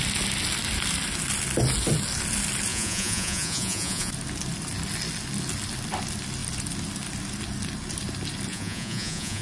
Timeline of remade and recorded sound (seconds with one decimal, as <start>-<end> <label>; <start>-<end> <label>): 0.0-2.7 recorded; 2.7-4.1 remade; 4.1-8.5 recorded; 8.5-9.4 remade